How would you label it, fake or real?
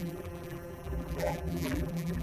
fake